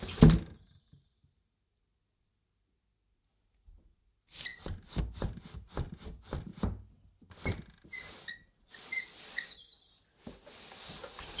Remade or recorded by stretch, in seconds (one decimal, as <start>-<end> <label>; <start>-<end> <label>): 0.0-11.4 recorded